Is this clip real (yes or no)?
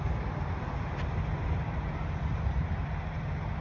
yes